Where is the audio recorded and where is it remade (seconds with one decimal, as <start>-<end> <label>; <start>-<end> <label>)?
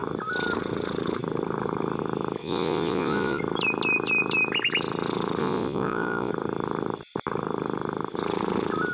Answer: 0.0-2.4 recorded; 2.4-3.4 remade; 3.4-5.4 recorded; 5.4-6.3 remade; 6.3-8.9 recorded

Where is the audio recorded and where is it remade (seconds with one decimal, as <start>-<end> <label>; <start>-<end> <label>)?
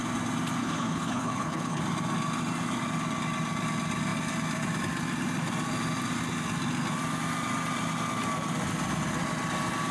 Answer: 0.0-0.6 recorded; 0.6-1.8 remade; 1.8-9.9 recorded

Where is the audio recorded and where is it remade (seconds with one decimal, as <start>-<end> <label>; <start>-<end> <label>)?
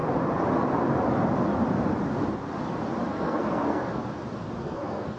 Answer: 0.0-3.1 recorded; 3.1-4.0 remade; 4.0-4.6 recorded; 4.6-5.2 remade